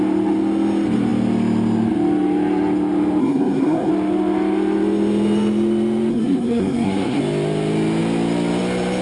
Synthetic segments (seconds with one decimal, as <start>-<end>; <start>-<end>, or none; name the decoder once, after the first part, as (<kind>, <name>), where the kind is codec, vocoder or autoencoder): 3.2-3.9 (codec, SNAC); 6.1-7.2